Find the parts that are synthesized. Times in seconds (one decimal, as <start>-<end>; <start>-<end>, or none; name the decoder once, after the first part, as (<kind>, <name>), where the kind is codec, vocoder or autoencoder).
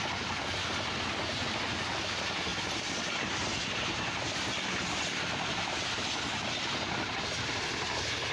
none